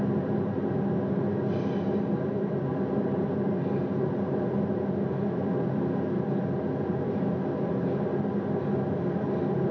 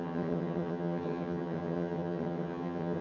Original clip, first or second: first